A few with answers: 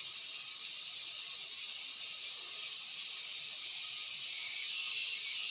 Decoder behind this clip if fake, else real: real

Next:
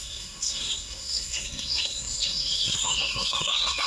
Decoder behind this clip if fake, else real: fake, codec, SNAC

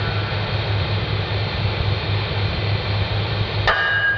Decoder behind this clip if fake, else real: real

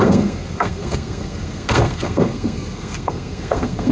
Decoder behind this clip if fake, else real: fake, codec, SNAC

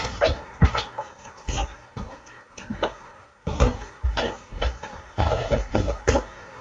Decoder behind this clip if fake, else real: fake, codec, SNAC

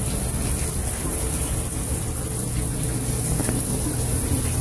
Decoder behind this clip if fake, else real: real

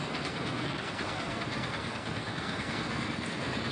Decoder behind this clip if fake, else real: fake, codec, SNAC